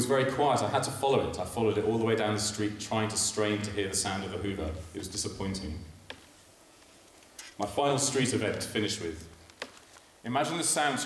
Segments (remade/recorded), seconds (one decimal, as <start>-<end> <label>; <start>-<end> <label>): 0.0-3.6 recorded; 3.6-4.5 remade; 4.5-6.5 recorded; 6.5-8.3 remade; 8.3-11.1 recorded